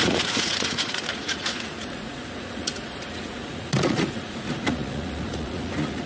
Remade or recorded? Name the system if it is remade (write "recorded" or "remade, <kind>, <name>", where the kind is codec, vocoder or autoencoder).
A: remade, vocoder, Vocos